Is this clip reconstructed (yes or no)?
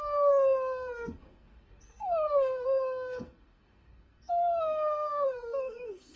yes